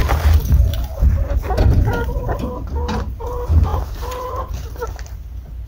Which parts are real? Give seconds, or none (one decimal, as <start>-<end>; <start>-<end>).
0.0-1.8